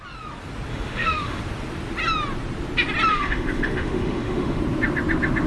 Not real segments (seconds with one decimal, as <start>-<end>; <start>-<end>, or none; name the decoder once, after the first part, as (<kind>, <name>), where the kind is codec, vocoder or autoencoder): 0.7-1.4 (autoencoder, DAC-VAE); 3.1-4.6